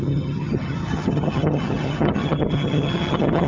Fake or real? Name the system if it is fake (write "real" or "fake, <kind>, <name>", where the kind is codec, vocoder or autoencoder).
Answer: fake, vocoder, HiFi-GAN